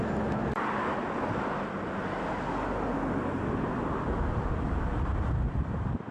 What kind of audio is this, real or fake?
real